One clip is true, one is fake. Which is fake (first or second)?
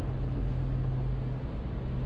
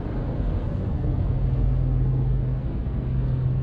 second